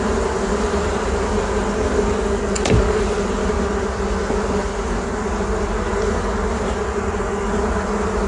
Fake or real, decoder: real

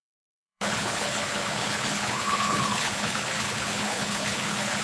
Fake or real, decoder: fake, codec, HILCodec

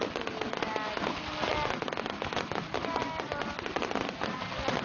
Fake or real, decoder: real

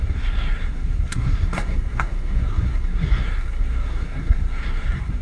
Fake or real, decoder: fake, codec, SNAC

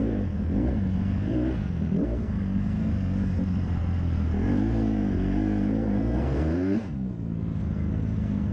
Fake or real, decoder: fake, codec, SNAC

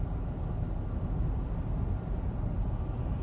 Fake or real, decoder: real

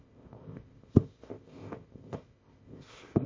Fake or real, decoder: fake, codec, ZipCodec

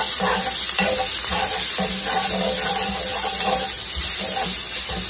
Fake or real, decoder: real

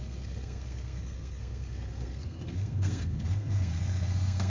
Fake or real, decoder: fake, codec, SNAC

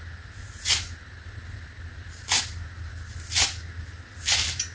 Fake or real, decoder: real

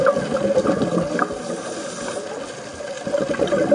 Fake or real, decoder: real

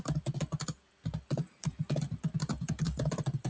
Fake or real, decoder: fake, vocoder, BigVGAN v2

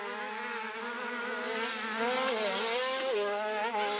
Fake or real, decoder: real